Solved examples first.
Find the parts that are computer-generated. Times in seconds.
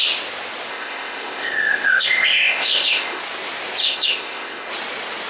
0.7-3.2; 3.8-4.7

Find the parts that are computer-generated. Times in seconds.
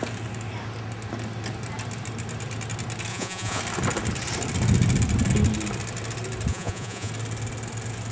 3.1-3.6; 6.5-7.1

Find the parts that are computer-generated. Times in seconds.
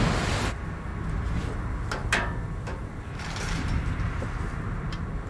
0.9-1.4; 2.0-5.3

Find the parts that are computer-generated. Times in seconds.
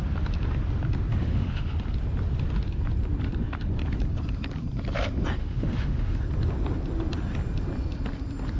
1.1-1.7; 5.4-6.2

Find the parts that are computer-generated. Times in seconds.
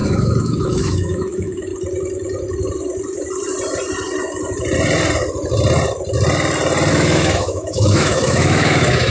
0.0-1.7; 6.9-9.1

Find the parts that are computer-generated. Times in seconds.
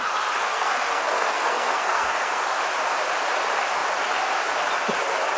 0.4-2.4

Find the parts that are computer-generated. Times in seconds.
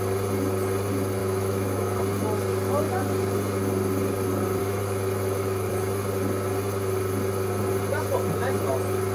1.2-2.0; 4.6-5.7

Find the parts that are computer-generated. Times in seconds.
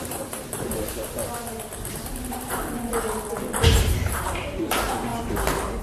0.0-1.2; 1.9-2.9; 3.7-5.1